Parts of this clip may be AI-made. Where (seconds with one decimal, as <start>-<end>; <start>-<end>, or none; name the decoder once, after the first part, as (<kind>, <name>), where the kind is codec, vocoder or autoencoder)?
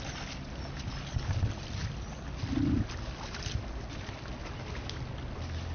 none